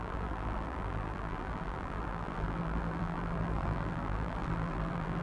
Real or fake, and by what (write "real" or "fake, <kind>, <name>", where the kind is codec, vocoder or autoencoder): fake, vocoder, BigVGAN v2